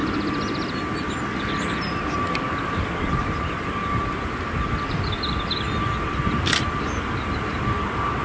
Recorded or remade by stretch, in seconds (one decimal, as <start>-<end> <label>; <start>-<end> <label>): 0.0-8.2 recorded